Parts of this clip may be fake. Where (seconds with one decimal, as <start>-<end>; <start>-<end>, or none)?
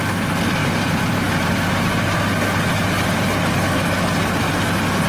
0.6-2.1